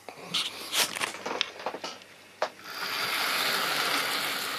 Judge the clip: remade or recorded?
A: recorded